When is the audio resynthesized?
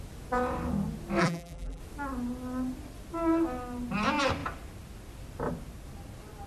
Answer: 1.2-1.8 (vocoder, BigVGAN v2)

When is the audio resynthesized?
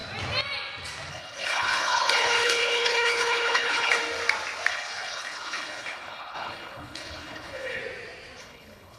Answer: 1.1-4.0 (codec, HILCodec); 4.7-7.8; 8.4-9.0